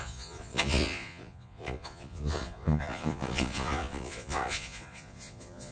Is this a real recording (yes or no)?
no